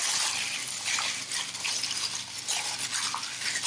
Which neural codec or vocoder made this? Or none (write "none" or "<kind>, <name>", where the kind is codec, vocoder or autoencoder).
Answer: none